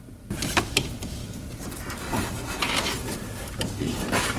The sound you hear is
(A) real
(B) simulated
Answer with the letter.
A